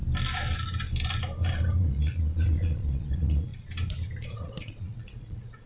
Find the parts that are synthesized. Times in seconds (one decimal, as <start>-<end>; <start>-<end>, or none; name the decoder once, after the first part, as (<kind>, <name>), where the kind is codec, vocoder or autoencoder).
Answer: 1.8-3.5 (vocoder, Vocos); 4.3-5.7